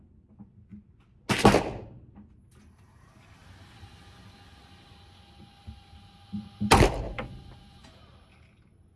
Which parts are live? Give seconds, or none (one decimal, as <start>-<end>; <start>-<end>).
0.0-9.0

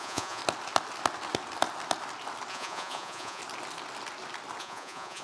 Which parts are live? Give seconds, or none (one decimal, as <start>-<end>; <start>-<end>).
0.4-2.5; 3.4-4.6

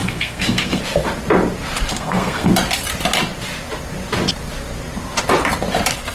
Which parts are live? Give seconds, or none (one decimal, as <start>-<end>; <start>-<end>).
0.8-1.9; 2.5-6.1

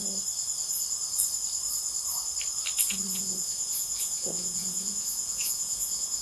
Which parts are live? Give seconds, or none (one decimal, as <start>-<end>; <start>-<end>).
0.0-3.1

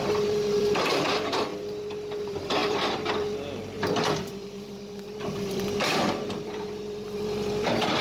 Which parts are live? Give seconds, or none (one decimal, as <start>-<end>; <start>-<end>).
1.5-2.2

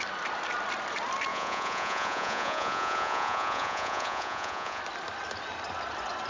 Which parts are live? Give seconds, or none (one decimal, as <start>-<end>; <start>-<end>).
0.0-1.3; 4.8-6.3

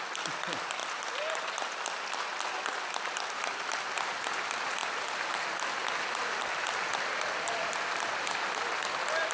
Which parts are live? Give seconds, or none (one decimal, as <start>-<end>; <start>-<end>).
0.0-9.3

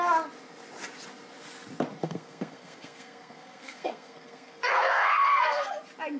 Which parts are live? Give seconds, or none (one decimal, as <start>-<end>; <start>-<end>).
0.0-2.0; 5.7-6.2